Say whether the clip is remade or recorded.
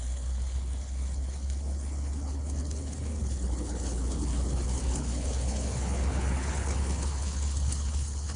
remade